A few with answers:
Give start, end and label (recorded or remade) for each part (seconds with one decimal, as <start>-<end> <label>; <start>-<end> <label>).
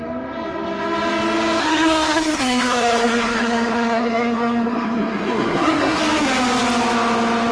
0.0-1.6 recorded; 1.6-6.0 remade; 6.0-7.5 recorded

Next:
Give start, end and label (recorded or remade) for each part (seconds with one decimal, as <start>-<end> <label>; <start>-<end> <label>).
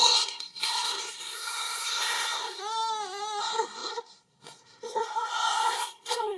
0.0-2.6 remade; 2.6-3.4 recorded; 3.4-6.4 remade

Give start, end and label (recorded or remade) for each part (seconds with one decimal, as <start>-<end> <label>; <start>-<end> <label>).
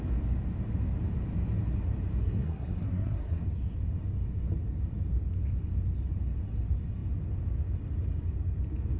0.0-2.2 recorded; 2.2-3.4 remade; 3.4-9.0 recorded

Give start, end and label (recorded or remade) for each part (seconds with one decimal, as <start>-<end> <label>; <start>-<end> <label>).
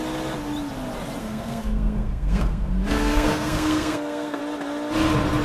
0.0-1.2 recorded; 1.2-4.4 remade; 4.4-5.4 recorded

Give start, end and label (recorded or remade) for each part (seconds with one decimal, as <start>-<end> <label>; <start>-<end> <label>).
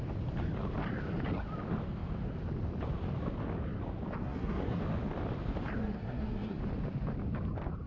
0.0-4.2 recorded; 4.2-4.8 remade; 4.8-5.8 recorded; 5.8-6.6 remade; 6.6-7.9 recorded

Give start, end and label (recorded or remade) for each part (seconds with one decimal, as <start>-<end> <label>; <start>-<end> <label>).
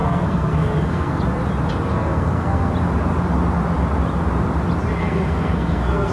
0.0-1.2 remade; 1.2-1.9 recorded; 1.9-2.7 remade; 2.7-5.0 recorded; 5.0-6.1 remade